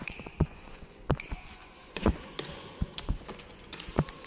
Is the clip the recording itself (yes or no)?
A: no